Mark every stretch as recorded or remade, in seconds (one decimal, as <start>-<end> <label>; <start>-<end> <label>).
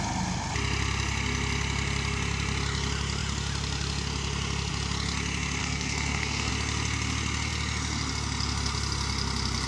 0.0-5.6 recorded; 5.6-6.5 remade; 6.5-9.7 recorded